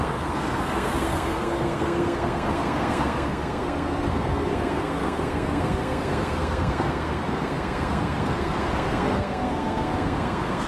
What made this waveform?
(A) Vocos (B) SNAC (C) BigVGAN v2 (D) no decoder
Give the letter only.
B